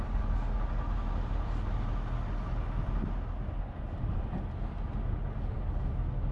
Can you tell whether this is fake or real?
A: real